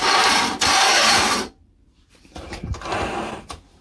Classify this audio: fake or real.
fake